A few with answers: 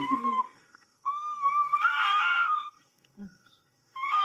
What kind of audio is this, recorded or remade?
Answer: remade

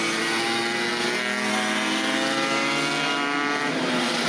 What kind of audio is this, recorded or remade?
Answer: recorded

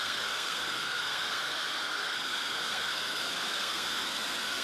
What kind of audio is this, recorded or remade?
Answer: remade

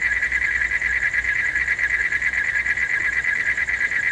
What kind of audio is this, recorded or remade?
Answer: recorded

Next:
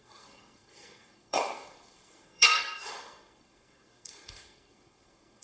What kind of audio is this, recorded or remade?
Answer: remade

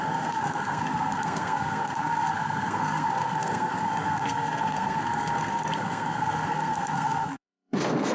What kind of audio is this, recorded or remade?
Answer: remade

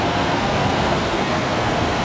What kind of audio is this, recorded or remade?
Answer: remade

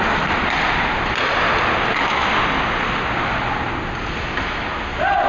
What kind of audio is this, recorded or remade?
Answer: recorded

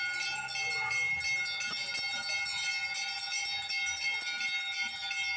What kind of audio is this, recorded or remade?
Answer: recorded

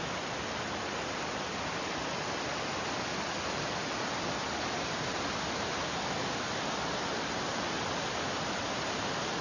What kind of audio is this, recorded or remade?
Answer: recorded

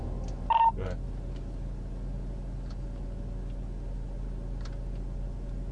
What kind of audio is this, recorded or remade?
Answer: recorded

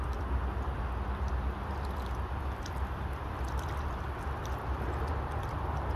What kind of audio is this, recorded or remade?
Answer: recorded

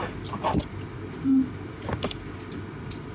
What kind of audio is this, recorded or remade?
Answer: recorded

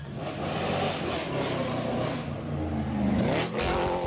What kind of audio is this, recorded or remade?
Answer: recorded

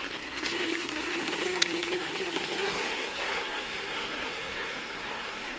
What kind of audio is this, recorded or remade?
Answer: remade